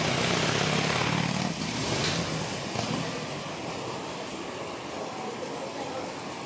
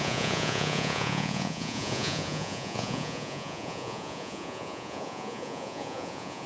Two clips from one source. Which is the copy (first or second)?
second